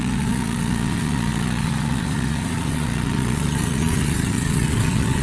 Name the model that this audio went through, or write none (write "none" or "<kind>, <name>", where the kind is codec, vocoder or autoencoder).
vocoder, Vocos